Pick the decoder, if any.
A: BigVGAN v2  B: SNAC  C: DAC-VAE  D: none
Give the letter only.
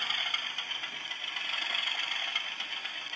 D